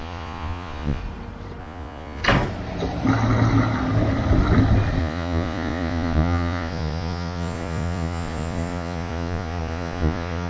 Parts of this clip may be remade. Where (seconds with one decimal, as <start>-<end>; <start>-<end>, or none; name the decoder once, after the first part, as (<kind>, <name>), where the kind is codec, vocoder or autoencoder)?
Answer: 0.0-1.0 (vocoder, Vocos); 1.6-2.2; 5.0-10.5